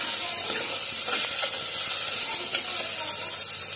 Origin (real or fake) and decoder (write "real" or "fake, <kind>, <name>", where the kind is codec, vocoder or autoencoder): real